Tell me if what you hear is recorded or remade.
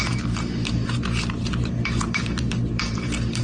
remade